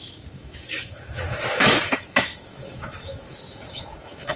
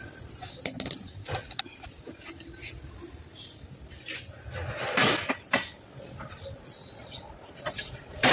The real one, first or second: second